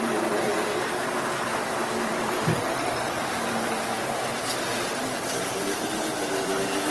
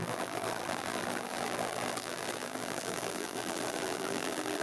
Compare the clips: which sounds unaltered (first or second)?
first